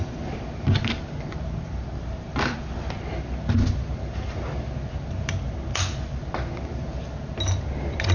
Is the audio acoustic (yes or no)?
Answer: yes